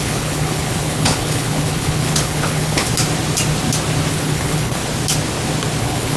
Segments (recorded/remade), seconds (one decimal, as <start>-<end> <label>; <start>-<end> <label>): 0.0-2.9 remade; 2.9-4.1 recorded; 4.1-4.8 remade; 4.8-5.8 recorded; 5.8-6.2 remade